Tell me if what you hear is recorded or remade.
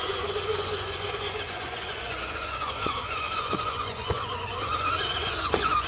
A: remade